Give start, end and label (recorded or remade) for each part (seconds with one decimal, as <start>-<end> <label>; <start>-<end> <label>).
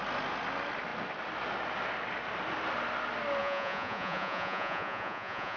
0.0-3.4 recorded; 3.4-5.6 remade